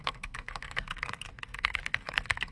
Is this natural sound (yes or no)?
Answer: no